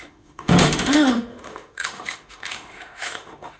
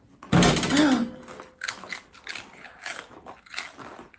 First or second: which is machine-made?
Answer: first